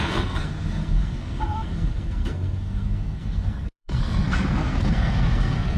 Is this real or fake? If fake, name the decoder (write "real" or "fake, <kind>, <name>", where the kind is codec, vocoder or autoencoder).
fake, codec, SNAC